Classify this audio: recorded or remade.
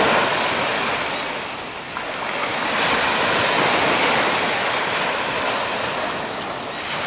recorded